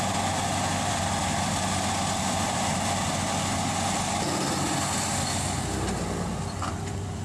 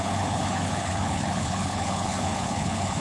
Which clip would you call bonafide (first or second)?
first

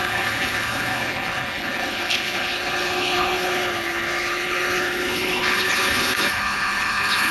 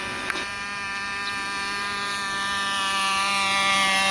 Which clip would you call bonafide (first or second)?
second